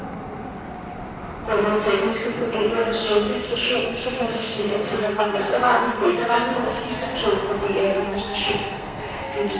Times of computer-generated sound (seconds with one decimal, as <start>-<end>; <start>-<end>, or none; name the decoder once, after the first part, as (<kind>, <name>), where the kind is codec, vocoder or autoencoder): 2.1-6.8 (codec, SNAC); 7.8-9.6